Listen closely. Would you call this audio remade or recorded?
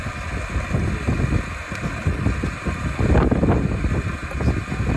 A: recorded